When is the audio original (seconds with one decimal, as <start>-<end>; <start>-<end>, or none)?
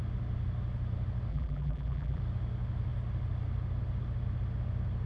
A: 0.0-1.3; 2.2-5.1